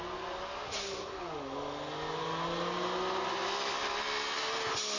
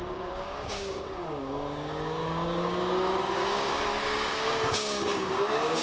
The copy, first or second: second